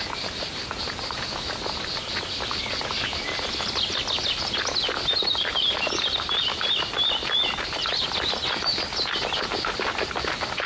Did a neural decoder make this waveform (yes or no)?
no